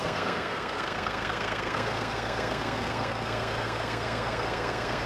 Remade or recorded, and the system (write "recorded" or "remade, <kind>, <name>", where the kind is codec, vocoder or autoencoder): remade, codec, SNAC